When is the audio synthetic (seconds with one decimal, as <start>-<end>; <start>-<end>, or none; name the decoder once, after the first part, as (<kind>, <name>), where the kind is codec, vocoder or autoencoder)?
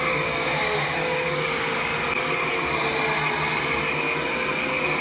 0.0-1.9 (codec, DAC)